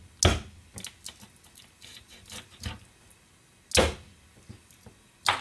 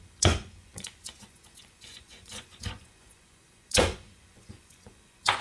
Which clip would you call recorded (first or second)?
first